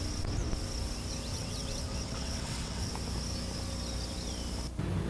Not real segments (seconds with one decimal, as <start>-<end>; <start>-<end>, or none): 1.3-2.9